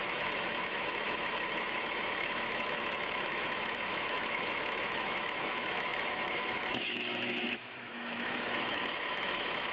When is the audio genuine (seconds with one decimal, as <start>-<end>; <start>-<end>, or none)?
none